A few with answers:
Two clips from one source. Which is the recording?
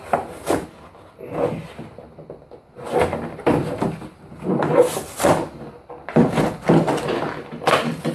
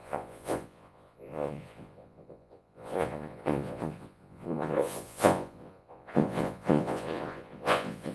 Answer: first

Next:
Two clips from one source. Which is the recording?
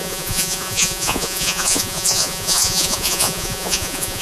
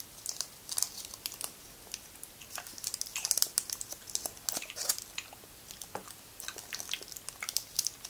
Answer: second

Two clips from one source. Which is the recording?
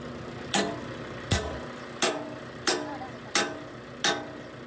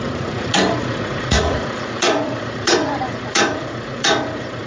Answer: first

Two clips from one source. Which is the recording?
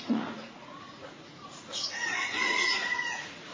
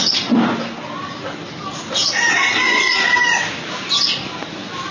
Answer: second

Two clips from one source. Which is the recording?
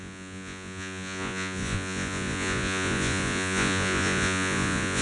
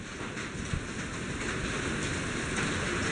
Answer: second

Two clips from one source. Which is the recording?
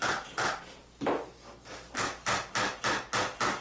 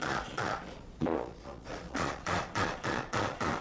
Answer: first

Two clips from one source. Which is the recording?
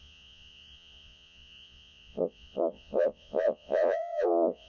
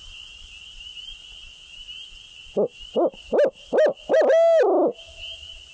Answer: second